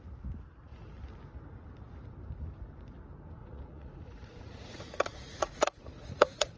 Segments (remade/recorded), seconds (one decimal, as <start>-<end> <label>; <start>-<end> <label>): 0.0-3.4 recorded; 3.4-6.6 remade